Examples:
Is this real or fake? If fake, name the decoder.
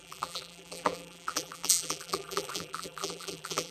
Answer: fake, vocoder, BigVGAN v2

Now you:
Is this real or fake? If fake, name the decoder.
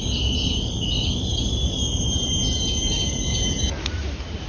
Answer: real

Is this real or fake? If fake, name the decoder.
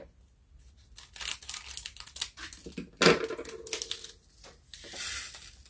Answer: real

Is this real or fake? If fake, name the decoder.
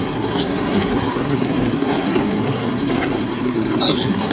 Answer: fake, codec, SNAC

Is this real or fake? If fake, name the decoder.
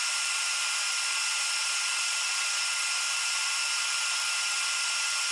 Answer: real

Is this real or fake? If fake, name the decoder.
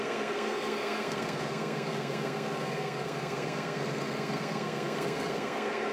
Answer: fake, codec, SNAC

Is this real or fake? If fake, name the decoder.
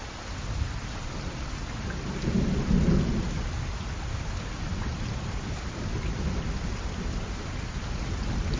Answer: real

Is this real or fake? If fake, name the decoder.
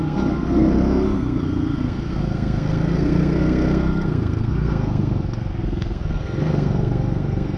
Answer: fake, codec, SNAC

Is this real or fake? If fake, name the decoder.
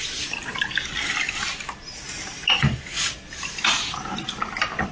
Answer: real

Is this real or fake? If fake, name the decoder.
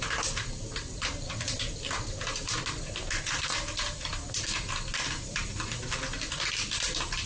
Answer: fake, vocoder, BigVGAN v2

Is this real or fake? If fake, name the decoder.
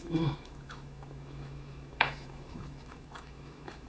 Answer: fake, autoencoder, DAC-VAE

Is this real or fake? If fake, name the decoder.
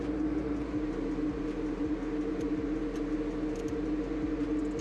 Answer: real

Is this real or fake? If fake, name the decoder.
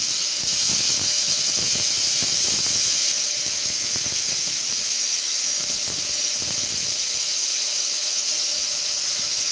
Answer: fake, autoencoder, DAC-VAE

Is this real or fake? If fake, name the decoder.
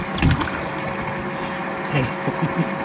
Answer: real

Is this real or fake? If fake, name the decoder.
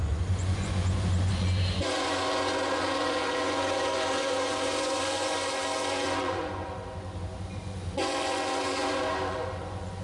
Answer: fake, vocoder, Vocos